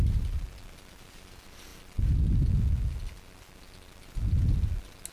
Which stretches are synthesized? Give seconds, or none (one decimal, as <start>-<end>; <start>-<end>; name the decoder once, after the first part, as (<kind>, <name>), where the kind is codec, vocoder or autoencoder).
none